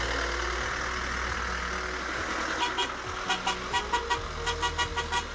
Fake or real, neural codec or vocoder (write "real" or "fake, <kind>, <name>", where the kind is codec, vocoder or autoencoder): real